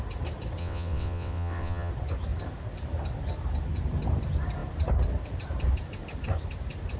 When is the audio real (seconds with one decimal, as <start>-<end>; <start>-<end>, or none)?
0.0-0.6; 1.9-7.0